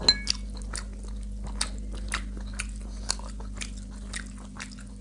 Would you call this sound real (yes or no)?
yes